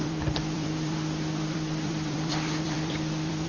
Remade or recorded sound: remade